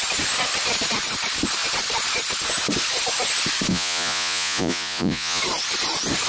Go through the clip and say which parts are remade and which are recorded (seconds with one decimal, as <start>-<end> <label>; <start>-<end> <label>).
0.0-3.7 recorded; 3.7-5.4 remade; 5.4-6.3 recorded